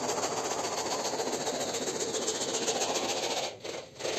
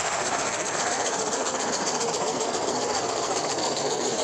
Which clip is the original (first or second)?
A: first